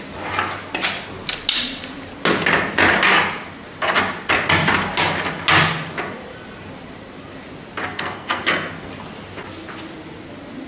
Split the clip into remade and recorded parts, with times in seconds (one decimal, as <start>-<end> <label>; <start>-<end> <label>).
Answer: 0.0-7.9 recorded; 7.9-8.9 remade; 8.9-10.7 recorded